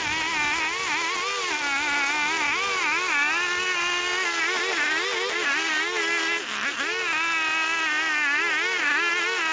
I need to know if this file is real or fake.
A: real